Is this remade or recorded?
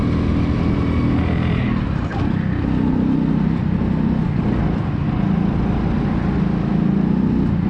recorded